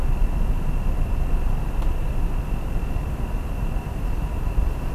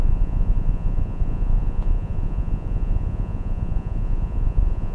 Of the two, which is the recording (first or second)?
first